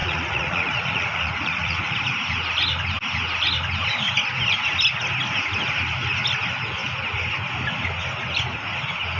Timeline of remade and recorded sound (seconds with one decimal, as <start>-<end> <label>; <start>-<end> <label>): 0.0-2.0 remade; 2.0-9.2 recorded